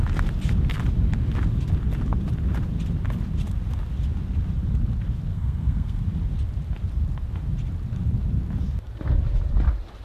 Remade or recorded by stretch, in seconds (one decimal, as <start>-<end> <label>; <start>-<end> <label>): 0.0-5.3 recorded; 5.3-6.0 remade; 6.0-10.0 recorded